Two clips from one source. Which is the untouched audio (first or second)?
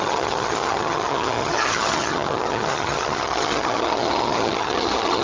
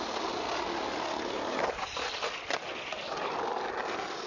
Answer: second